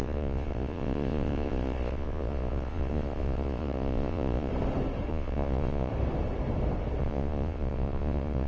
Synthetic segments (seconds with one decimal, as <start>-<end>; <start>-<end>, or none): 0.0-4.5; 5.1-5.9; 7.0-8.5